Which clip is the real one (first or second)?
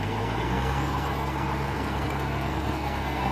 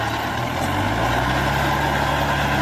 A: second